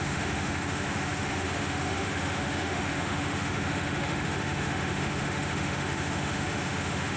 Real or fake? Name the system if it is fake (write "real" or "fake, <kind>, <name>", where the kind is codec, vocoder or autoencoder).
fake, autoencoder, DAC-VAE